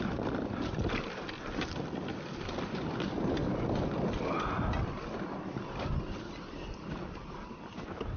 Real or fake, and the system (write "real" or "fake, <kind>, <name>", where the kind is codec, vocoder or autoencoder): real